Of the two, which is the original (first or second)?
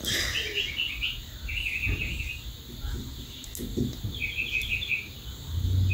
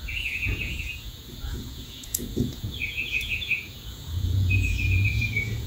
first